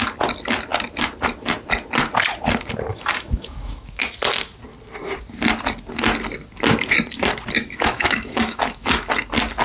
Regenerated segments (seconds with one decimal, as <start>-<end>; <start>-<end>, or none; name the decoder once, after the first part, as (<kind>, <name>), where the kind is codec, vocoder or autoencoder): 2.9-4.0 (autoencoder, DAC-VAE); 7.6-9.1